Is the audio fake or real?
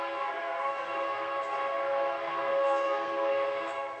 fake